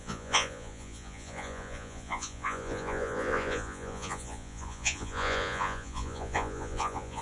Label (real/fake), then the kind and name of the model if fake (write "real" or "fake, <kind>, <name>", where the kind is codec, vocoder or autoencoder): fake, vocoder, Vocos